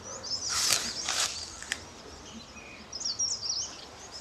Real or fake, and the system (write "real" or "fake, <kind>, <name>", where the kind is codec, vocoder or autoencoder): real